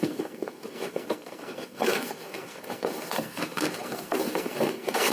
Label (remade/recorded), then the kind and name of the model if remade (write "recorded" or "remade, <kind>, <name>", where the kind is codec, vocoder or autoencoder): remade, codec, SNAC